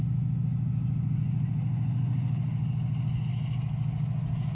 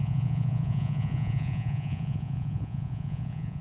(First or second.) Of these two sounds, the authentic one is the first